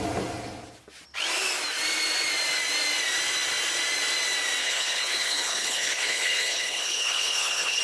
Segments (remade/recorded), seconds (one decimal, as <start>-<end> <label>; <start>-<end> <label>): 0.0-4.6 recorded; 4.6-7.8 remade